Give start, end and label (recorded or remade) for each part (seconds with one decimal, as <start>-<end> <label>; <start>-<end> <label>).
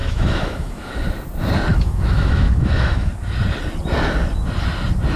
0.0-0.9 remade; 0.9-1.7 recorded; 1.7-3.1 remade; 3.1-5.2 recorded